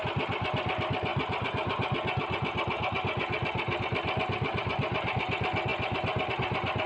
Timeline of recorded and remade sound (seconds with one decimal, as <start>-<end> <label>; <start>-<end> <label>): 0.0-6.9 recorded